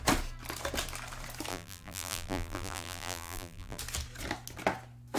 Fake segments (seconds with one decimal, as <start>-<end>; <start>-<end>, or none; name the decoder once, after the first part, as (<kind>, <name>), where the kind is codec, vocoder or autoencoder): 1.5-3.8 (vocoder, BigVGAN v2)